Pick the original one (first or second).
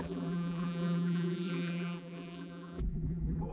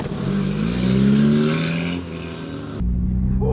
second